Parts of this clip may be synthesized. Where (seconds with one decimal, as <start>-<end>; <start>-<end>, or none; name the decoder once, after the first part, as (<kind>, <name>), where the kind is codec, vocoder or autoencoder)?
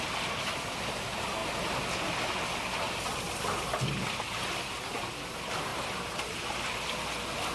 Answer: none